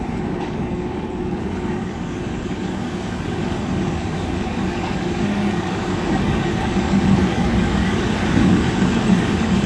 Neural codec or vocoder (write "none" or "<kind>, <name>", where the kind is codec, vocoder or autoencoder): codec, DAC